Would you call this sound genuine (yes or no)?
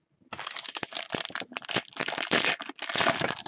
yes